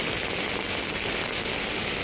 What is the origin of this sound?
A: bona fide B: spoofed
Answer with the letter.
A